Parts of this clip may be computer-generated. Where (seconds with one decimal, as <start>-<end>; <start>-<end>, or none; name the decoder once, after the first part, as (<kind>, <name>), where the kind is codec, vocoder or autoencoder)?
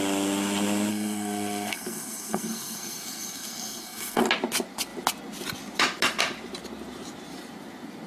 0.9-4.2 (codec, SNAC)